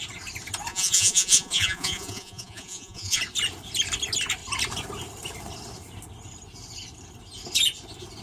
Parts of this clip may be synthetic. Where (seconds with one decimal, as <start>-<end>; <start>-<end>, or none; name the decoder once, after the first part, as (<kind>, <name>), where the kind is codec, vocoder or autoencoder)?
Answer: 0.7-3.2 (vocoder, Vocos)